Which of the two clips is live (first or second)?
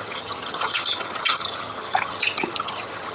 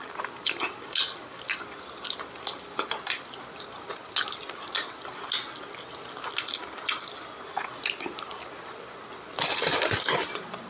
second